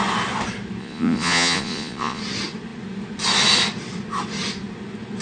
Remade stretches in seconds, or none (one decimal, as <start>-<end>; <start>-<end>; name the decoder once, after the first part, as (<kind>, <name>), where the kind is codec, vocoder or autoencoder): 0.8-2.2 (vocoder, Vocos)